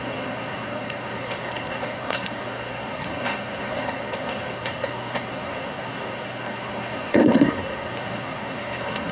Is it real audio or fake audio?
fake